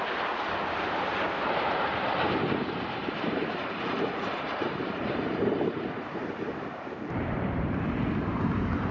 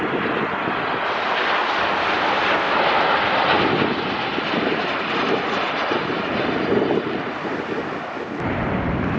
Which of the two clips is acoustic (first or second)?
second